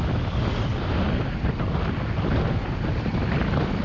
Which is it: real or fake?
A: real